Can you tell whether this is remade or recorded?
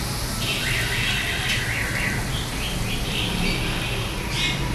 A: recorded